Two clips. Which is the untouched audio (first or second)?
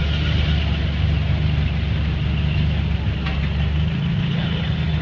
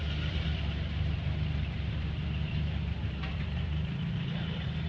first